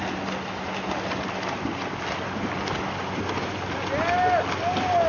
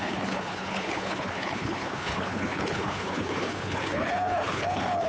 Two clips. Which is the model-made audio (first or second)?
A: second